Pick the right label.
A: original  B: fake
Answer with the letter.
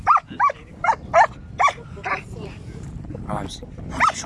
B